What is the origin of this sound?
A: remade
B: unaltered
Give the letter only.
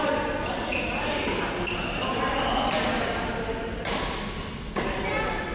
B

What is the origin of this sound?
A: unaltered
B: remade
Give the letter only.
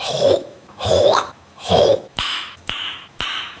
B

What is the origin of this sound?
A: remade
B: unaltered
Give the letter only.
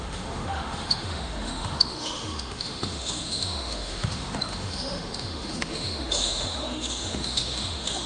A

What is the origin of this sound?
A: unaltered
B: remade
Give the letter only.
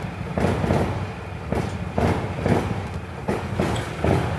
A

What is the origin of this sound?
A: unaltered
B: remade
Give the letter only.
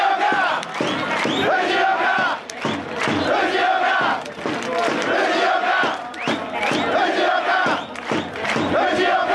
A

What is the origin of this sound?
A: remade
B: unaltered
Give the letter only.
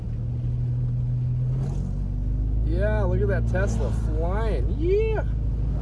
B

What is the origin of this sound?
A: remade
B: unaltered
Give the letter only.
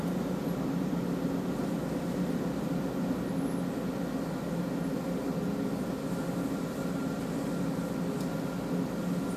B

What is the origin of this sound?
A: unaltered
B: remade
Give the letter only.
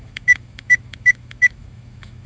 B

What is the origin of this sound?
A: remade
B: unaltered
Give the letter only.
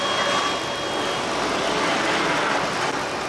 B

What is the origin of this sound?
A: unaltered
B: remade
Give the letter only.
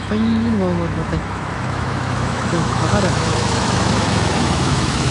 B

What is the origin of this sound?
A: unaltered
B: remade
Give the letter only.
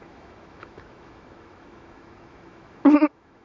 B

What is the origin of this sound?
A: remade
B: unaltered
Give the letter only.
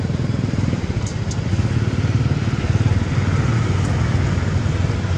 B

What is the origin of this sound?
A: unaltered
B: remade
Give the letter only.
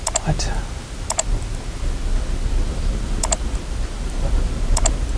A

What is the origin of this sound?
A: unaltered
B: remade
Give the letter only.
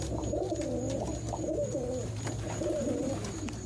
A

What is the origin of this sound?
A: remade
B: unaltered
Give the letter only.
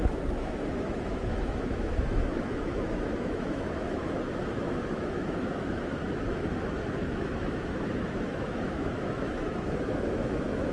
A